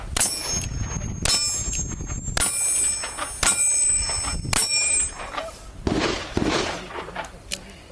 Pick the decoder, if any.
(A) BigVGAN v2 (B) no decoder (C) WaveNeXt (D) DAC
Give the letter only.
B